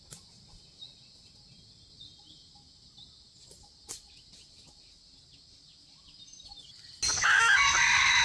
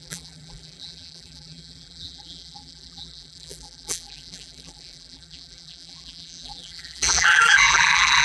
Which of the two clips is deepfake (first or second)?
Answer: second